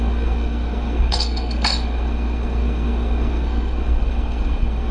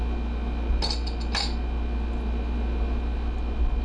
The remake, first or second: first